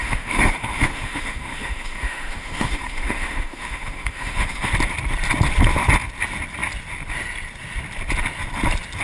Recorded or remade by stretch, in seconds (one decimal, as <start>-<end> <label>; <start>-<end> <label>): 0.0-4.7 remade; 4.7-9.0 recorded

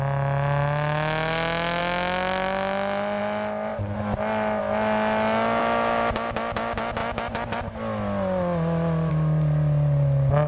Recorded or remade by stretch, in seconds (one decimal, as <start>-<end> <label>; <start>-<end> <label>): 0.0-10.5 recorded